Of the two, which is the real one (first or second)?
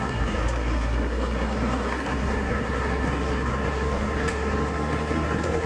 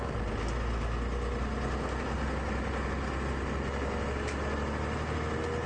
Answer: second